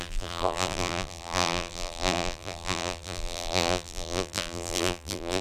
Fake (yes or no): yes